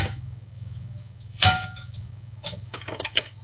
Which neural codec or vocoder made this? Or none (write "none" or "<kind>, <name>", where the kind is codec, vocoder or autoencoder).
codec, DAC